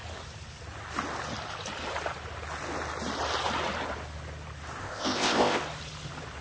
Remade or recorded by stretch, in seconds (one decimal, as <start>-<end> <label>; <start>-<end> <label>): 0.0-4.8 recorded; 4.8-5.6 remade; 5.6-6.4 recorded

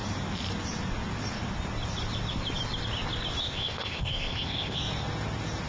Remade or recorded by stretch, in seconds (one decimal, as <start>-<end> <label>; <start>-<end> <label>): 0.0-3.4 recorded; 3.4-4.8 remade; 4.8-5.7 recorded